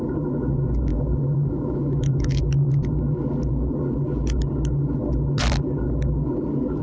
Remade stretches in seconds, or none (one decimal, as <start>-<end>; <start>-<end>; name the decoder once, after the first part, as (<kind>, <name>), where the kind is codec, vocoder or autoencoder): 0.9-2.4 (autoencoder, DAC-VAE)